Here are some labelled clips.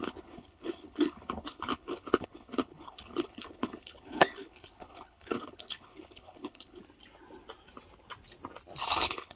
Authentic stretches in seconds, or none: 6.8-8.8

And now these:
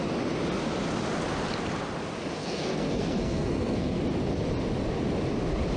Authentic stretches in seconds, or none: 0.0-2.4; 4.0-5.8